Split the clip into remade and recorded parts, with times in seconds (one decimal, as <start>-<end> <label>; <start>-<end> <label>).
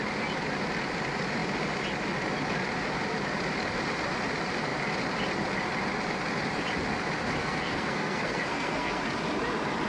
0.0-7.4 recorded; 7.4-9.0 remade; 9.0-9.9 recorded